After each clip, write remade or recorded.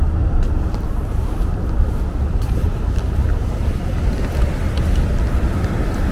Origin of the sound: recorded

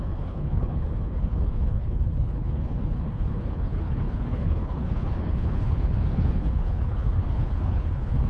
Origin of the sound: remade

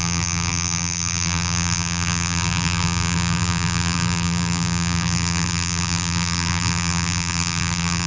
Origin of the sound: remade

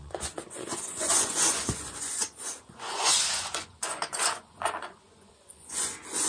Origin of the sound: remade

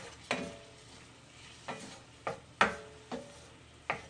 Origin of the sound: recorded